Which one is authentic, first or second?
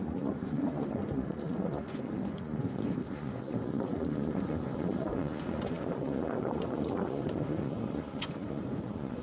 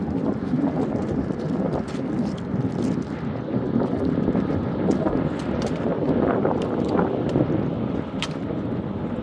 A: second